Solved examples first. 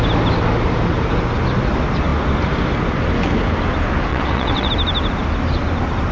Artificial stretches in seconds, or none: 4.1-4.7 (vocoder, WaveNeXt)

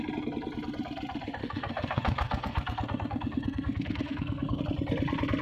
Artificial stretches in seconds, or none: 1.4-4.6 (codec, SNAC)

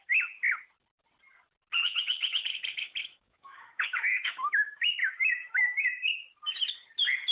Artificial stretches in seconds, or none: 1.8-6.2 (autoencoder, DAC-VAE)

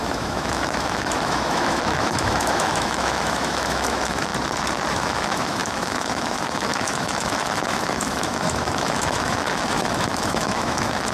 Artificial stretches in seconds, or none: 0.0-4.3 (autoencoder, DAC-VAE); 4.9-11.1

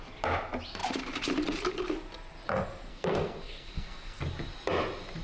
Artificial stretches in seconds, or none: 2.9-4.2 (codec, SNAC)

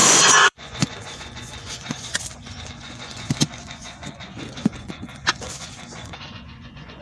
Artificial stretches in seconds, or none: 0.0-7.0 (vocoder, Vocos)